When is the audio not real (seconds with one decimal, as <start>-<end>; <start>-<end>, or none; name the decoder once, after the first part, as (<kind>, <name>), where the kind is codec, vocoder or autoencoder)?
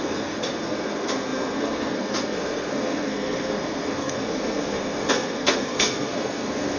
0.0-6.8 (codec, SNAC)